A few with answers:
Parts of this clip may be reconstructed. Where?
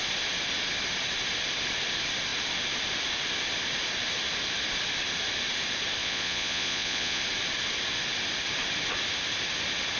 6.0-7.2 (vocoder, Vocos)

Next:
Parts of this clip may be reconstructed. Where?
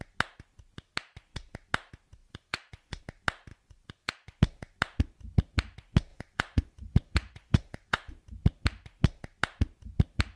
2.2-3.0 (vocoder, Vocos); 3.5-4.4; 6.1-8.1